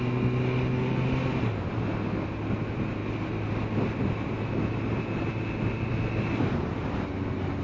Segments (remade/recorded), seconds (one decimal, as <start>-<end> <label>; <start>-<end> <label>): 0.0-7.6 recorded